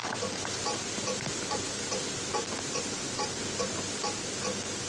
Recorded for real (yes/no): yes